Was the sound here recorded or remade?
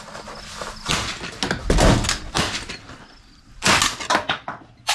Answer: recorded